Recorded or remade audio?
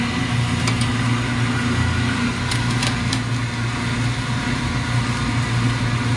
recorded